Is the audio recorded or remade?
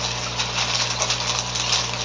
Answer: recorded